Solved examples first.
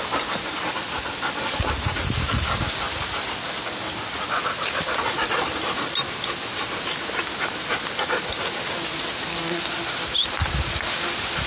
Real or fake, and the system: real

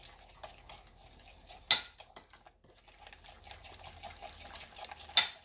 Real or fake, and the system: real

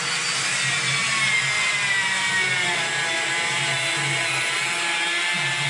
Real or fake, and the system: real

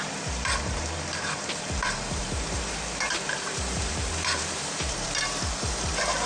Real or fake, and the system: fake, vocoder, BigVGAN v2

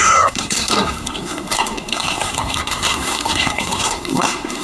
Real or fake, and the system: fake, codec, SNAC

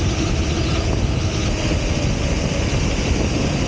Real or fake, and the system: real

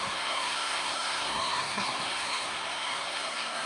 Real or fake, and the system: fake, codec, SNAC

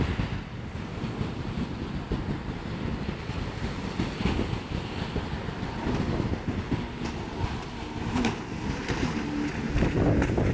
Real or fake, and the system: real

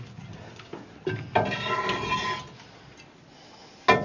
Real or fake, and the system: real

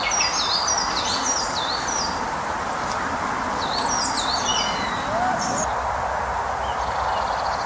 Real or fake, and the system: real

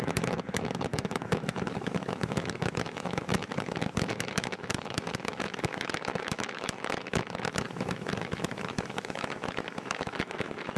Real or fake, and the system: fake, autoencoder, DAC-VAE